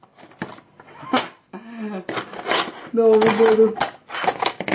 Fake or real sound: real